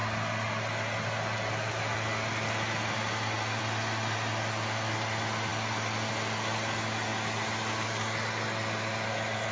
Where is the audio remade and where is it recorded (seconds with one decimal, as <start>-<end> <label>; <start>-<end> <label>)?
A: 0.0-9.5 recorded